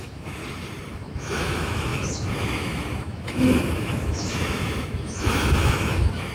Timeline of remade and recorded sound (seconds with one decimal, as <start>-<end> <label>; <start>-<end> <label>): 0.0-0.4 remade; 0.4-0.9 recorded; 0.9-6.3 remade